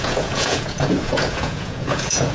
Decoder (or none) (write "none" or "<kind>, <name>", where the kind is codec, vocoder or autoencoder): vocoder, Vocos